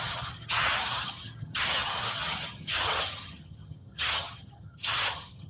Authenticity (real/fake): fake